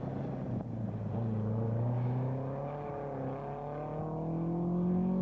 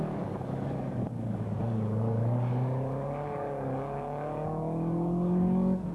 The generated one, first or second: second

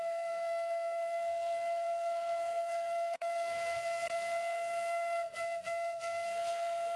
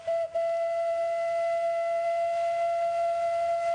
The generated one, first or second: first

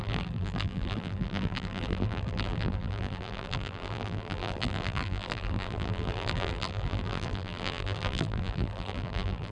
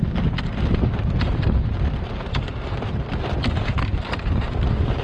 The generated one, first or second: first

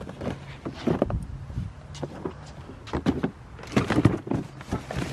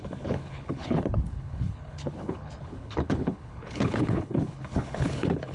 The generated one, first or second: second